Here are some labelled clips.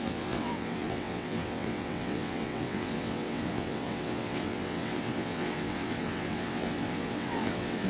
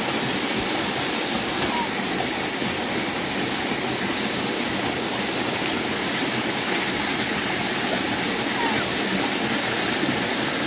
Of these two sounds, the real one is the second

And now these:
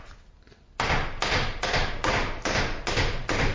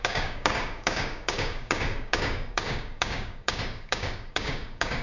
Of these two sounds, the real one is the first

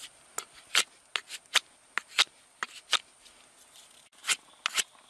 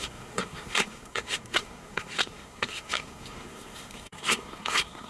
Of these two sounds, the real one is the first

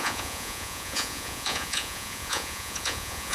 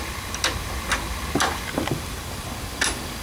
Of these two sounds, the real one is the second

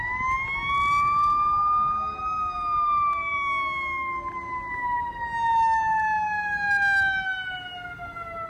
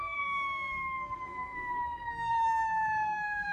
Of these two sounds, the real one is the first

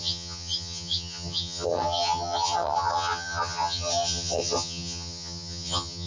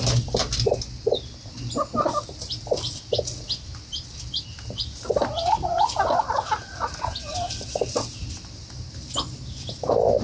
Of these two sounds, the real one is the second